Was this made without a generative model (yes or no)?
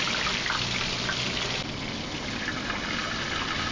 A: yes